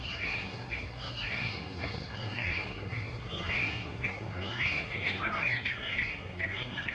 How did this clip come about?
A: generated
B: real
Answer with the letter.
A